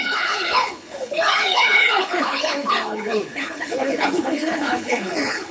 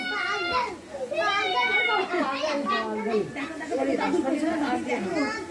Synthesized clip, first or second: first